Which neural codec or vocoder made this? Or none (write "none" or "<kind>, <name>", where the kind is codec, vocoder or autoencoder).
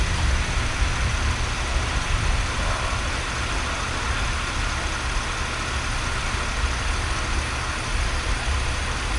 none